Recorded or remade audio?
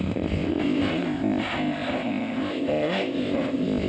remade